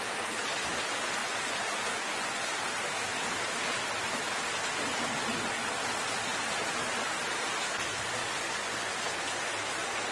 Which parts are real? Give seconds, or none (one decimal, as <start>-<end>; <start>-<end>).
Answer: 0.0-1.2; 2.4-8.2; 8.9-10.1